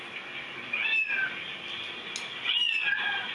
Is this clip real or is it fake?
real